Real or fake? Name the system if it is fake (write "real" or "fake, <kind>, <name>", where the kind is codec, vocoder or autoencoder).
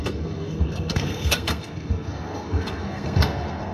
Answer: fake, codec, SNAC